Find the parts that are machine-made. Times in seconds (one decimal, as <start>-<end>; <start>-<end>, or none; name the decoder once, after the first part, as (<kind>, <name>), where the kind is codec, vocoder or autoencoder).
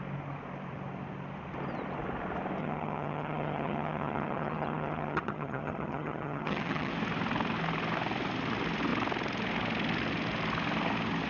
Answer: 2.6-6.9 (vocoder, HiFi-GAN)